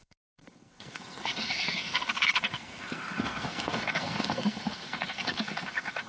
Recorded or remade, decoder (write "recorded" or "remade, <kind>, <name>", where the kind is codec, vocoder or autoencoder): remade, codec, SNAC